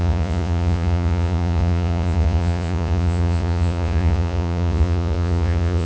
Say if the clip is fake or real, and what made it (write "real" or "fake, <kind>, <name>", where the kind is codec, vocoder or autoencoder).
fake, vocoder, Vocos